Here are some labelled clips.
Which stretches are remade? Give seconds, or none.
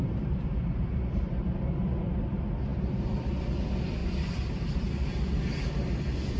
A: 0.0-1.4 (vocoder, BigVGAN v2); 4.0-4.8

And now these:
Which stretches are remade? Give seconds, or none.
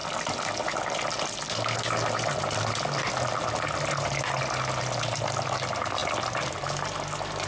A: 0.0-0.5 (vocoder, BigVGAN v2)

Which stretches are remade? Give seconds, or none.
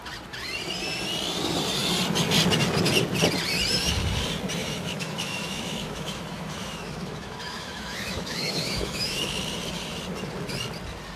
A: 4.6-9.4 (autoencoder, DAC-VAE)